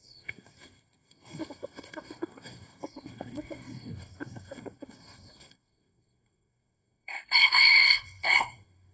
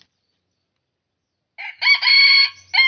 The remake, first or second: first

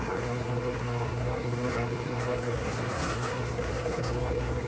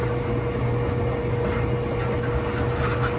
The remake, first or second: first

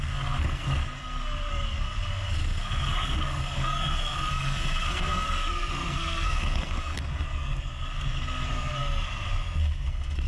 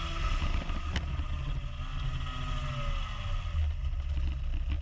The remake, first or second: first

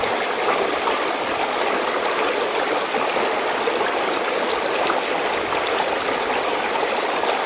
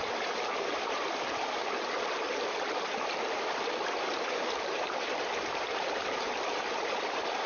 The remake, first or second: second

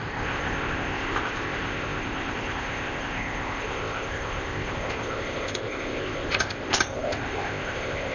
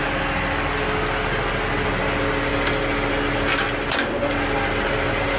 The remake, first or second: first